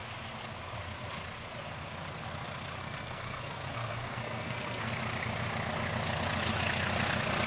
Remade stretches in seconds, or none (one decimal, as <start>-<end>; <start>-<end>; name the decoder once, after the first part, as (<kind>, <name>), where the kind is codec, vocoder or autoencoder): 2.8-4.9 (codec, SNAC)